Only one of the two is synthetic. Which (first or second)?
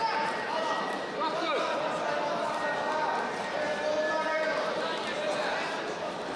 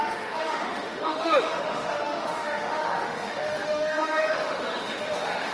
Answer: second